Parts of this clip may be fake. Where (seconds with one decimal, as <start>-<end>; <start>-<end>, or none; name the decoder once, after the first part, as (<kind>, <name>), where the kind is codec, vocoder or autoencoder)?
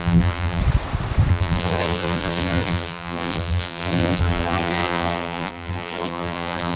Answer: 0.0-0.6 (vocoder, BigVGAN v2); 1.3-6.8